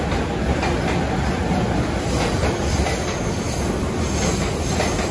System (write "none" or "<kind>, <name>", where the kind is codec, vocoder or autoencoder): none